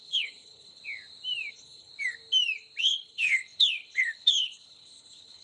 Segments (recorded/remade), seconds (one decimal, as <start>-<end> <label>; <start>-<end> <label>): 0.0-0.8 remade; 0.8-1.5 recorded; 1.5-1.9 remade; 1.9-2.8 recorded; 2.8-5.4 remade